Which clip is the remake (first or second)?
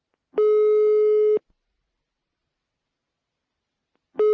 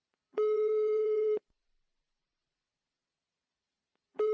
second